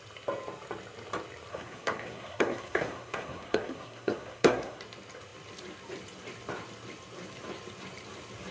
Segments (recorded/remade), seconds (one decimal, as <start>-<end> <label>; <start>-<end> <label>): 0.0-1.5 recorded; 1.5-4.8 remade; 4.8-8.5 recorded